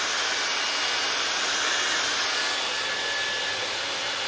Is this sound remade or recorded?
recorded